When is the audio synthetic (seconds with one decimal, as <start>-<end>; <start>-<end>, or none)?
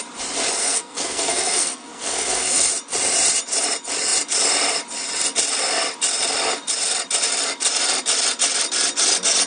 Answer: 0.6-2.7